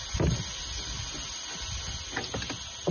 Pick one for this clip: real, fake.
real